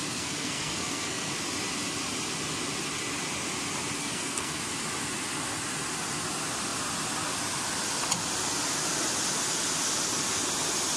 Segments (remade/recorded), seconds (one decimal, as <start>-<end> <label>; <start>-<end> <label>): 0.0-1.3 remade; 1.3-4.0 recorded; 4.0-4.6 remade; 4.6-11.0 recorded